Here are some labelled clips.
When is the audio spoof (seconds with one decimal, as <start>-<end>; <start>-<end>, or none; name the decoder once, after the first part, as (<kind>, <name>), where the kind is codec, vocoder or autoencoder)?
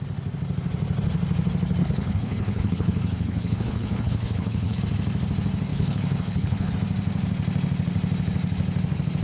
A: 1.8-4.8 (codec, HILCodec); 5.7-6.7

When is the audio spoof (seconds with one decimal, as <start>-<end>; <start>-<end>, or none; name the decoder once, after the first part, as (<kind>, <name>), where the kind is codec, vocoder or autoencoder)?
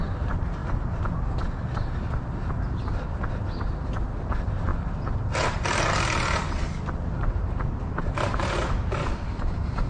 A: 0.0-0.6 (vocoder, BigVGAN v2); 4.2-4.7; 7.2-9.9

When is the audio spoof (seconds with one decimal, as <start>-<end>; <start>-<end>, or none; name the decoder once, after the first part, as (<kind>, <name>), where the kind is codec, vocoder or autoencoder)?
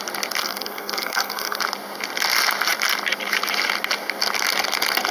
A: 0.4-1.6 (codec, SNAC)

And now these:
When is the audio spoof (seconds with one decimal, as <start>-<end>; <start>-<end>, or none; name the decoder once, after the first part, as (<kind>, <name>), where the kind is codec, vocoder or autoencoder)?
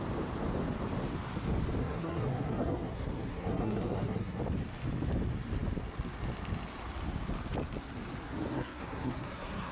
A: 1.8-4.4 (codec, SNAC); 8.5-9.7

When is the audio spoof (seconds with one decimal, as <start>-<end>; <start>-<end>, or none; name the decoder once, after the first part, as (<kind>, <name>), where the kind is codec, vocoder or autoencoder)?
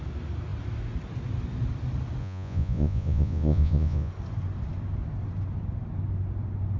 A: 2.2-4.1 (vocoder, Vocos)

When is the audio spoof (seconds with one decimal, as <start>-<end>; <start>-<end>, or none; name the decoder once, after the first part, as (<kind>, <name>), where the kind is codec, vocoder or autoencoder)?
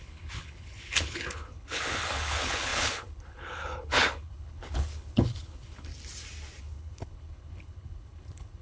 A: 0.0-5.9 (codec, HILCodec); 6.6-8.6